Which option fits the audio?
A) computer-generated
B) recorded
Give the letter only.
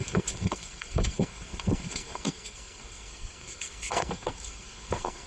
A